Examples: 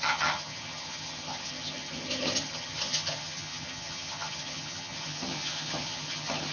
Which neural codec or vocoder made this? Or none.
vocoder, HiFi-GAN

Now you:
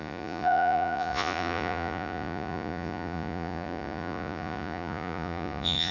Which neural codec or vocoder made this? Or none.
vocoder, Vocos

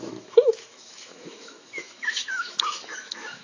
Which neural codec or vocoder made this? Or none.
autoencoder, DAC-VAE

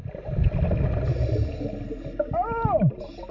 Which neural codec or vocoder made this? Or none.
none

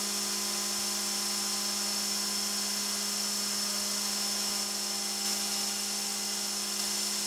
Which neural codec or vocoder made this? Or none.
none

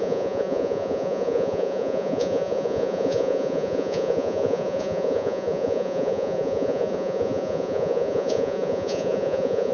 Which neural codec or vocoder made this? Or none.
vocoder, Vocos